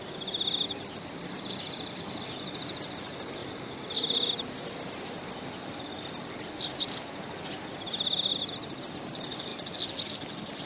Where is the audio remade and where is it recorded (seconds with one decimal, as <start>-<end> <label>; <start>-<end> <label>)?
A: 0.0-10.7 recorded